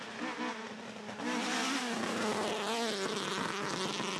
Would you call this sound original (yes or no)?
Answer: yes